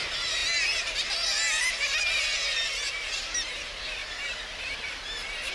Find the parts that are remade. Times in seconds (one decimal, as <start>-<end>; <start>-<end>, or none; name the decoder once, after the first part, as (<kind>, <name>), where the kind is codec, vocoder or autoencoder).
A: 0.0-5.5 (vocoder, BigVGAN v2)